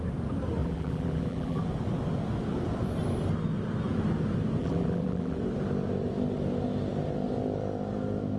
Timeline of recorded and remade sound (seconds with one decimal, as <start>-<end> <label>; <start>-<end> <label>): 0.0-0.6 recorded; 0.6-1.6 remade; 1.6-4.6 recorded; 4.6-5.4 remade; 5.4-8.4 recorded